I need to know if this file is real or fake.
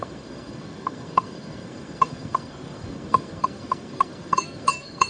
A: fake